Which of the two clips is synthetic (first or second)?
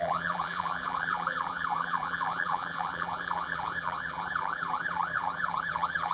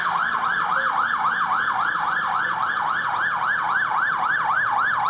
first